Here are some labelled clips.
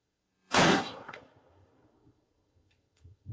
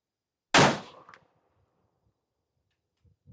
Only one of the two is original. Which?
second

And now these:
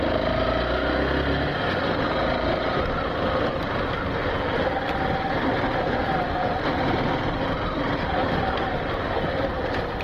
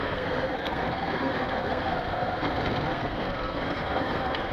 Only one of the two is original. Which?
first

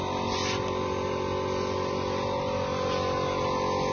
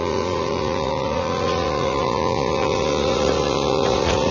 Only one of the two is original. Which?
first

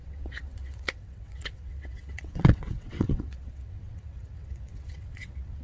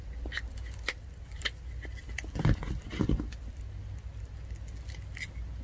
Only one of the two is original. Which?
second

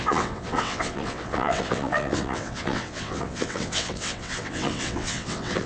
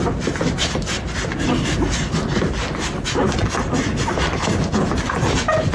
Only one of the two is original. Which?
second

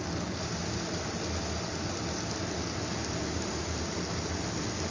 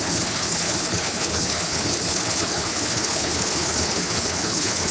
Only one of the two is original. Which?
first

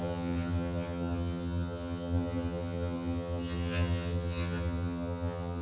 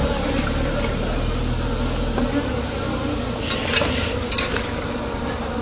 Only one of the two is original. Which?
second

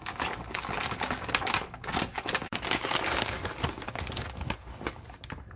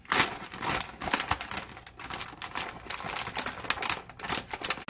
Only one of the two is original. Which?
second